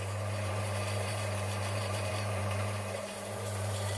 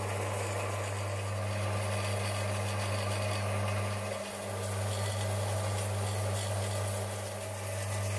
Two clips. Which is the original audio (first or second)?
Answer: second